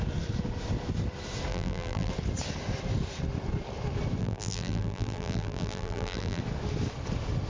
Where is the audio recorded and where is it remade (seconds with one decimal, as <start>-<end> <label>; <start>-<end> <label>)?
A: 0.0-1.5 recorded; 1.5-2.1 remade; 2.1-4.2 recorded; 4.2-6.4 remade; 6.4-7.5 recorded